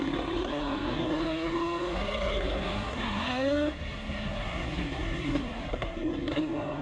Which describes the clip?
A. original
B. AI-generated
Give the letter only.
B